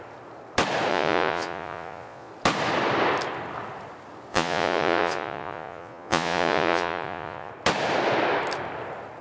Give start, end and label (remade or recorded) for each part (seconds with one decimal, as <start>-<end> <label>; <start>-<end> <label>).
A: 0.0-0.9 recorded; 0.9-2.3 remade; 2.3-4.3 recorded; 4.3-7.5 remade; 7.5-9.2 recorded